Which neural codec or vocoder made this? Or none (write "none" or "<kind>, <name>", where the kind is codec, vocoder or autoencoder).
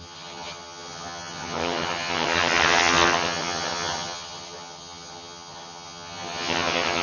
vocoder, HiFi-GAN